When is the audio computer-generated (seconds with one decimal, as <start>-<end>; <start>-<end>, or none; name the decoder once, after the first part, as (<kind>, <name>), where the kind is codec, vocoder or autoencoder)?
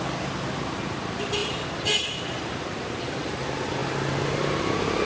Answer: none